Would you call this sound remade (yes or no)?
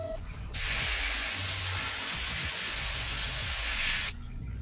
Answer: yes